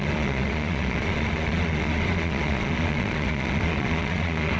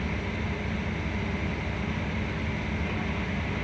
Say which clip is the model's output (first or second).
first